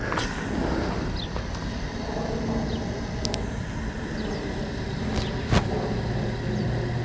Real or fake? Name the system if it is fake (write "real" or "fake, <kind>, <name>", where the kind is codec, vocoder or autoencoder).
real